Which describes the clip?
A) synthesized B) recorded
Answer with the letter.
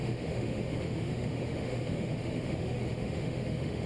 A